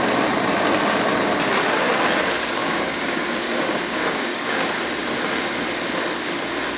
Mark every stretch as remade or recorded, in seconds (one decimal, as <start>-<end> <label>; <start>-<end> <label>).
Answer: 0.0-2.6 recorded; 2.6-4.7 remade; 4.7-6.8 recorded